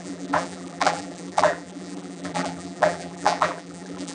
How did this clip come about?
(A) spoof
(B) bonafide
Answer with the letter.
A